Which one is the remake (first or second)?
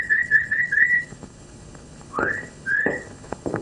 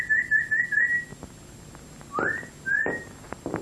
first